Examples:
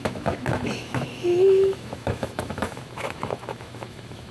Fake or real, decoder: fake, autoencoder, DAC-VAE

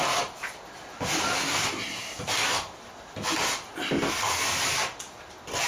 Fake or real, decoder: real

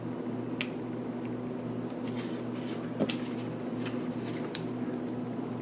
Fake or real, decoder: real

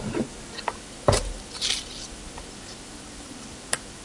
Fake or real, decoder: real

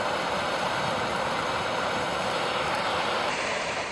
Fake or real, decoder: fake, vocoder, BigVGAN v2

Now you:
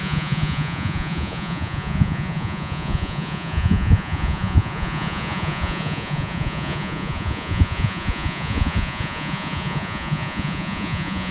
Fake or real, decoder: fake, vocoder, Vocos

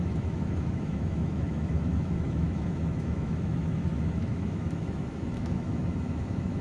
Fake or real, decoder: fake, autoencoder, DAC-VAE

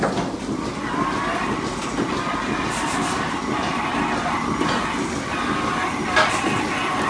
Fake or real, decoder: real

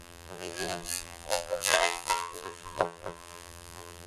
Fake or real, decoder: fake, vocoder, BigVGAN v2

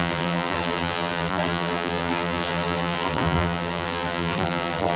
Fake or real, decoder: fake, vocoder, BigVGAN v2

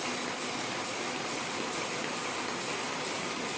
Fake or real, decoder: real